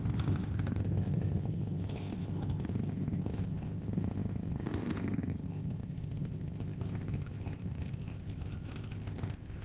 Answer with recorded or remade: remade